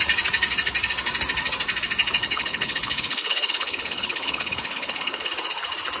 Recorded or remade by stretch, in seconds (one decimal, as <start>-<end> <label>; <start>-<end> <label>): 0.0-2.2 recorded; 2.2-5.3 remade; 5.3-6.0 recorded